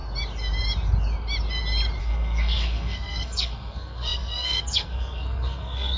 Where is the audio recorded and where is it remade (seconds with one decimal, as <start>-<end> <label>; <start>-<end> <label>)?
0.0-2.0 recorded; 2.0-6.0 remade